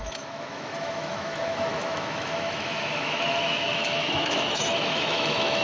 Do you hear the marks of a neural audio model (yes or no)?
yes